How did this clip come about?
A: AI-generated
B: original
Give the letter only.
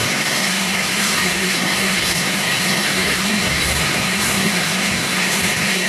A